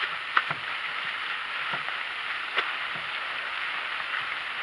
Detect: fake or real real